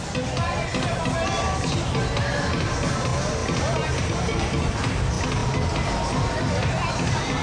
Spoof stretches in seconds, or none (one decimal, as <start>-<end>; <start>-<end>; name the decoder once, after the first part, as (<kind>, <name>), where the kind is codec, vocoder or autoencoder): none